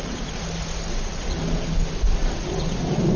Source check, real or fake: real